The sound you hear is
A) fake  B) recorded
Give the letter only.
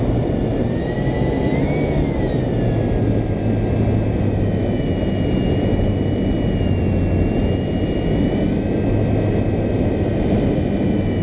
B